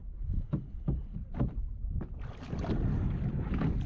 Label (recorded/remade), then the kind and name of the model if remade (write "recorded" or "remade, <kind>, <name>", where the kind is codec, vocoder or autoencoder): recorded